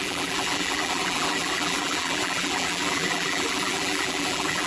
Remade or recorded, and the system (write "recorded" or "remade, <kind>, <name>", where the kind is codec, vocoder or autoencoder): remade, vocoder, BigVGAN v2